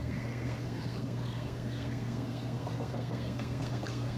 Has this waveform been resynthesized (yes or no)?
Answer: yes